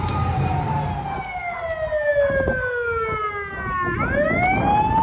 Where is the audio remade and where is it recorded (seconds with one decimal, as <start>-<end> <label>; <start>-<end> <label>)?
0.0-5.0 recorded